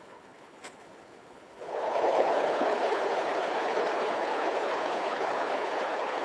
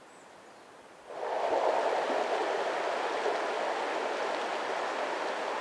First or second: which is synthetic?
first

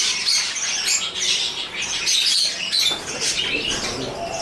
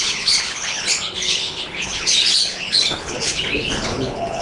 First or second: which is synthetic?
second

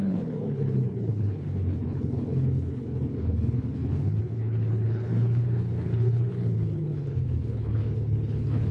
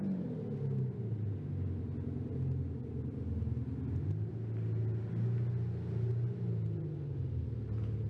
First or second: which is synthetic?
first